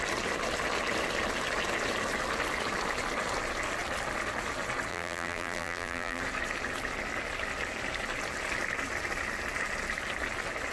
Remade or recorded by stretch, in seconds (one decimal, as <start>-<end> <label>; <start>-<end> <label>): 0.0-4.9 recorded; 4.9-6.2 remade; 6.2-10.7 recorded

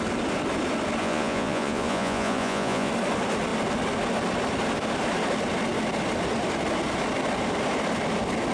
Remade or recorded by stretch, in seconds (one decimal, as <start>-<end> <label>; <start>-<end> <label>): 0.0-1.0 recorded; 1.0-2.9 remade; 2.9-8.5 recorded

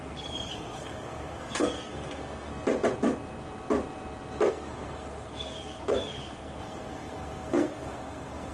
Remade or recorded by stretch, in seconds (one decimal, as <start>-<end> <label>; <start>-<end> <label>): 0.0-2.5 remade; 2.5-4.5 recorded; 4.5-8.5 remade

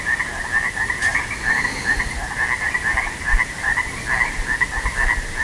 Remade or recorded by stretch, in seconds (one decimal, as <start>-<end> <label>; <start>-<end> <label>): 0.0-5.4 recorded